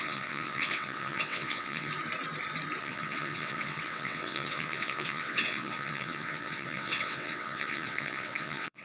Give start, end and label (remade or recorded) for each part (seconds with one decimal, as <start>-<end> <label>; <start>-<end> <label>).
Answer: 0.0-1.9 remade; 1.9-2.8 recorded; 2.8-8.8 remade